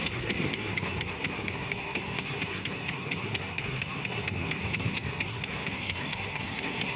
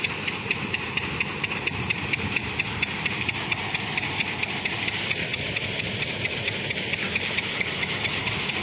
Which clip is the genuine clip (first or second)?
second